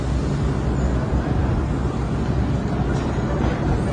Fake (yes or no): no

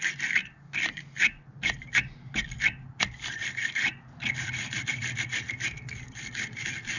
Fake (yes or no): no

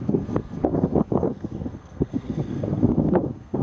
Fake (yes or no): yes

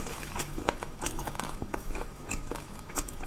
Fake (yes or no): yes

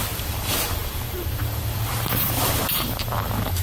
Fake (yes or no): yes